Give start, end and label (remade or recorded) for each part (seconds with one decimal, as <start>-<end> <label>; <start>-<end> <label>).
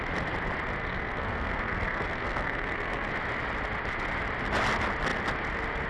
0.0-0.8 recorded; 0.8-3.1 remade; 3.1-5.9 recorded